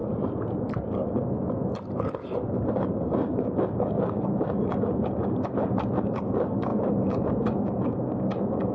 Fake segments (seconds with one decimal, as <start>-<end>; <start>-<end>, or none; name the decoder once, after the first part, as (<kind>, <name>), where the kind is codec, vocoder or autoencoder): 2.9-8.7 (codec, DAC)